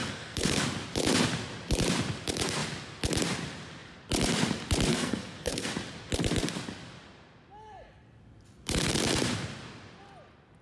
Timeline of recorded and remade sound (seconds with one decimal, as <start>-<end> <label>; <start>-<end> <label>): 0.0-0.6 remade; 0.6-4.9 recorded; 4.9-5.7 remade; 5.7-10.6 recorded